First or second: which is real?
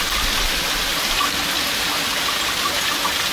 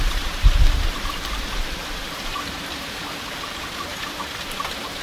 first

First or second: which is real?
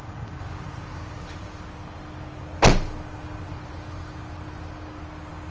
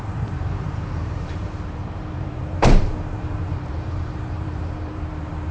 first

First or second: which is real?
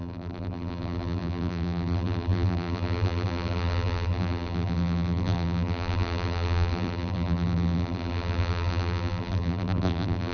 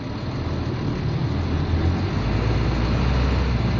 second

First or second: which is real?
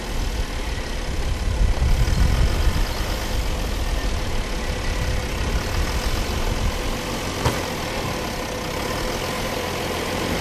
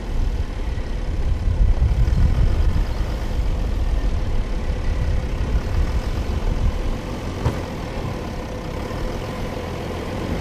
first